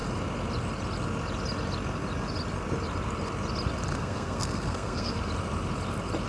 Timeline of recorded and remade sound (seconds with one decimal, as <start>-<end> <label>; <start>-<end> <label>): 0.0-3.9 recorded; 3.9-5.2 remade; 5.2-6.3 recorded